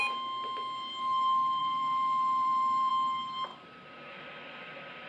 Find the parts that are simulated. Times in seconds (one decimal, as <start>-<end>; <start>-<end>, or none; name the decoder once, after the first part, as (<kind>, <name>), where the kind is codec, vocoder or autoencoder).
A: 1.6-2.9 (vocoder, BigVGAN v2); 3.5-4.2